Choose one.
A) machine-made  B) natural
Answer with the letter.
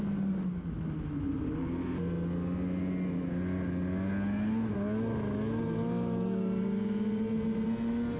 B